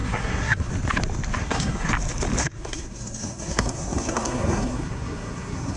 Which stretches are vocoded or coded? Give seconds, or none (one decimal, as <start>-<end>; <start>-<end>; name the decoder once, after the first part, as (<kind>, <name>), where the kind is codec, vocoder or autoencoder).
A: 0.0-0.7 (codec, SNAC); 1.4-1.9; 2.4-5.8